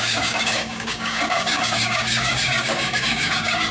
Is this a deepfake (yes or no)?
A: yes